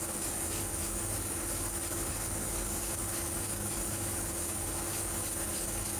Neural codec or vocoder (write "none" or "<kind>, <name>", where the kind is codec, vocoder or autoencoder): codec, DAC